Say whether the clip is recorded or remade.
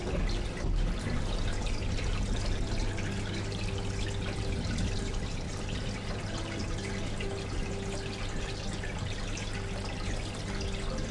recorded